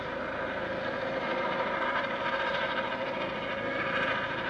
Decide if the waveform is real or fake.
real